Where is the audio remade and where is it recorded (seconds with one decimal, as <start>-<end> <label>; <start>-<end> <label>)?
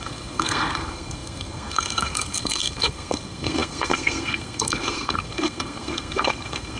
0.0-6.8 remade